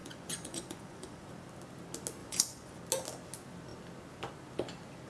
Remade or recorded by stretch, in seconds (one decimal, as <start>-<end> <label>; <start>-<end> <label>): 0.0-1.3 remade; 1.3-2.2 recorded; 2.2-2.8 remade; 2.8-5.1 recorded